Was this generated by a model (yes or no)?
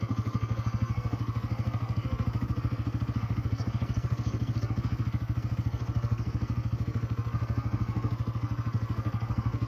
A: yes